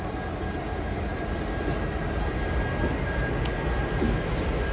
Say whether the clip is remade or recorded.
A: recorded